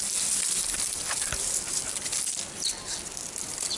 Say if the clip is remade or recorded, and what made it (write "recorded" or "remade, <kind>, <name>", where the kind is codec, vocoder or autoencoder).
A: recorded